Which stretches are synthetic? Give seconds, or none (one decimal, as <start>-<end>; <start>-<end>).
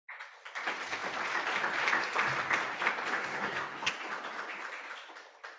3.1-3.9